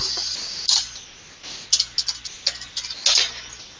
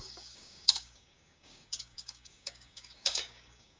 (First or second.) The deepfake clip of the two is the second